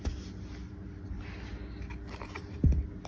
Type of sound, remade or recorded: recorded